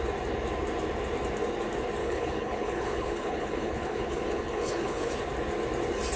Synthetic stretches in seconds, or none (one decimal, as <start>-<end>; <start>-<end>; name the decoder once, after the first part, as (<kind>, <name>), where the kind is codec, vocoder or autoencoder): 2.0-5.1 (codec, HILCodec)